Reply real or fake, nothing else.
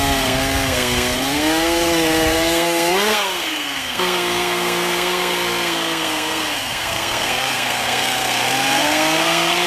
fake